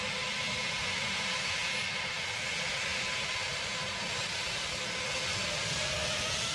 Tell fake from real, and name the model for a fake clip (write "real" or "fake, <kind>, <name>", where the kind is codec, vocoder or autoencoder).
real